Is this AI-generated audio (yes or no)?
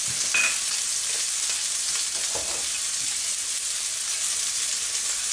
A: no